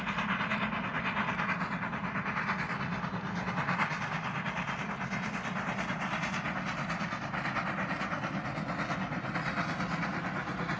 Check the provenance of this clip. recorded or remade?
recorded